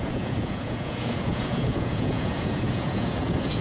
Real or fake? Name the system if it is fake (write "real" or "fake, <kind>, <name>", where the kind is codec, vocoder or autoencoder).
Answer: fake, vocoder, Vocos